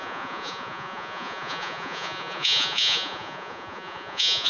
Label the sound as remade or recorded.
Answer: remade